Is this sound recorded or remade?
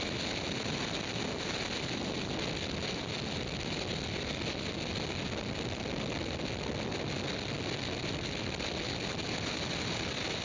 recorded